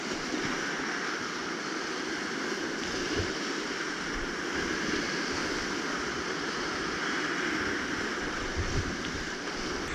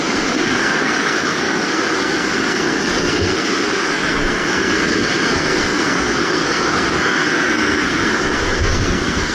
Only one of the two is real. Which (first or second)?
first